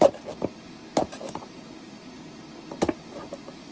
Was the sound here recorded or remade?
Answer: recorded